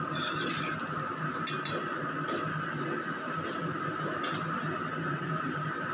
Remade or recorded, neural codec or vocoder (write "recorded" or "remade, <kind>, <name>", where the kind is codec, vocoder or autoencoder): recorded